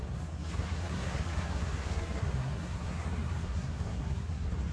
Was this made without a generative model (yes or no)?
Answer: no